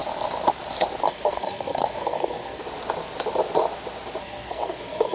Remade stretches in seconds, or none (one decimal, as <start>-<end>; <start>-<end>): 1.0-2.6; 4.2-5.1